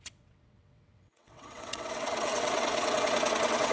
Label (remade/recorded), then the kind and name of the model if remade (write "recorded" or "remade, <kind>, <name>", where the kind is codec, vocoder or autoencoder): remade, vocoder, WaveNeXt